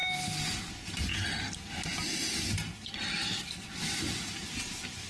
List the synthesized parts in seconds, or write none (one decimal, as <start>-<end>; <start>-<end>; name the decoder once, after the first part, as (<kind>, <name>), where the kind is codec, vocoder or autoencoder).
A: 0.0-0.6 (vocoder, BigVGAN v2)